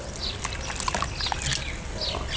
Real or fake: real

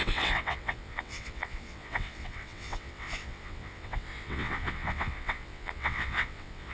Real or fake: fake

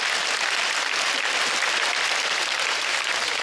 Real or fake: real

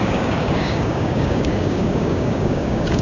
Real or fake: fake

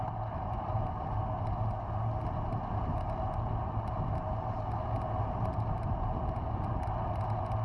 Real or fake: real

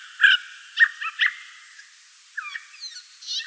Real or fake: real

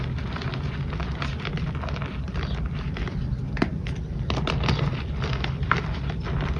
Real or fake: real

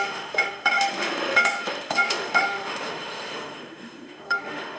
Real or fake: fake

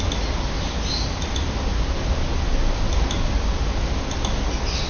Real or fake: real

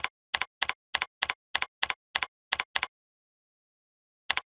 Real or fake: real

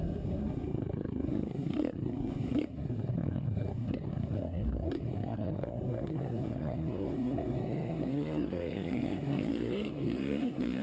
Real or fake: fake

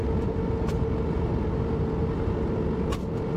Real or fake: real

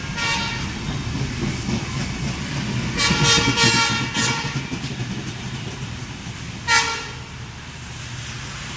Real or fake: real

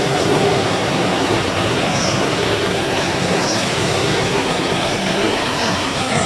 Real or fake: fake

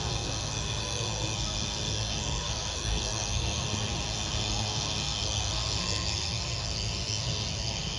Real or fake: fake